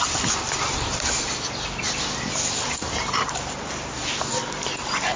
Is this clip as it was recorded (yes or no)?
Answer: yes